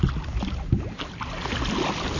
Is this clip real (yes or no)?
yes